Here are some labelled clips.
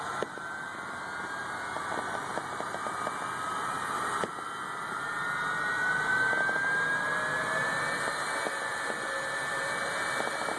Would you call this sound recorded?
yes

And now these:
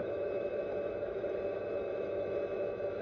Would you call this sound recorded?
no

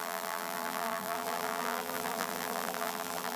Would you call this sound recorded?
no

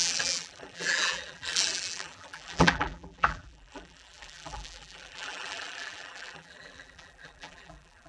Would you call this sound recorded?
no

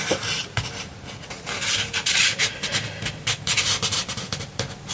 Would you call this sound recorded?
yes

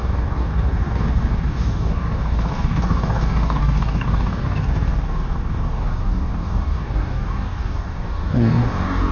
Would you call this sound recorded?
no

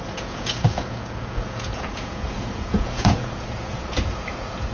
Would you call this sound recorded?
no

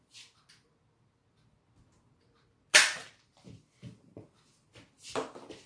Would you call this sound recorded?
yes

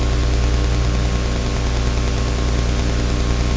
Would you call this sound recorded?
yes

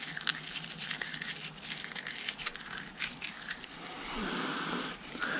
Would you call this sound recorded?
yes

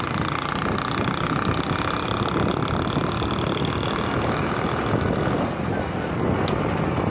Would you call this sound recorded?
yes